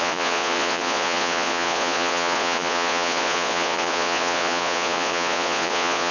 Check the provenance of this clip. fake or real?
fake